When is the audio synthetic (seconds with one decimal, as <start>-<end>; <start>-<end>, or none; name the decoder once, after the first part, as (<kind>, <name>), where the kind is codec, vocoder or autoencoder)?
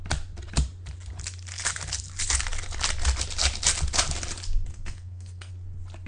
4.7-5.5 (codec, SNAC)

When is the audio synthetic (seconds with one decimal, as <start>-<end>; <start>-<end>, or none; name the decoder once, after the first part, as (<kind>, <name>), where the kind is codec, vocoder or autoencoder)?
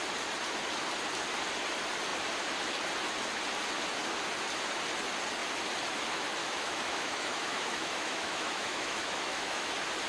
6.4-9.7 (autoencoder, DAC-VAE)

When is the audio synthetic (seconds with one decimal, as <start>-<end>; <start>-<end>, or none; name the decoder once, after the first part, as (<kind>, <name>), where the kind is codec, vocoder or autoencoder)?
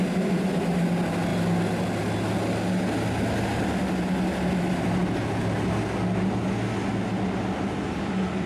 none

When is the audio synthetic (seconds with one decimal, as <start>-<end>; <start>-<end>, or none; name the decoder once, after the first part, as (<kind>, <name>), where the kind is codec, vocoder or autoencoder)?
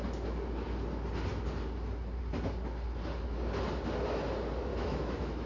4.7-5.5 (autoencoder, DAC-VAE)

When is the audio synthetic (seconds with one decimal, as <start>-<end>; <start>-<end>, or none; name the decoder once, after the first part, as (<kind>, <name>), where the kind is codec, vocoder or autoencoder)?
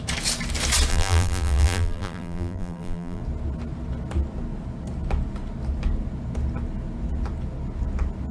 0.9-3.2 (vocoder, BigVGAN v2)